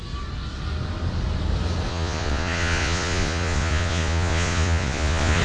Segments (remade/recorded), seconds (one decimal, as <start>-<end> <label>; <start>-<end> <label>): 0.0-1.9 recorded; 1.9-5.4 remade